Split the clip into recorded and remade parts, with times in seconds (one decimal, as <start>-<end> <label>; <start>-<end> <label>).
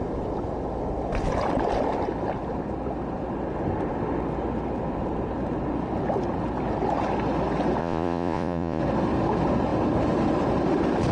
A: 0.0-7.8 recorded; 7.8-8.8 remade; 8.8-11.1 recorded